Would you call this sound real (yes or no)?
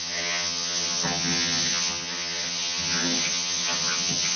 no